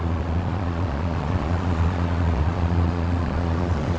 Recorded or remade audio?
remade